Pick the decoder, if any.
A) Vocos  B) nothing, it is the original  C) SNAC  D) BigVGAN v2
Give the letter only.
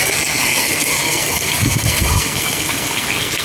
C